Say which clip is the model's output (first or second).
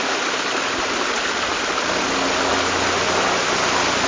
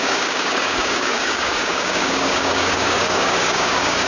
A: second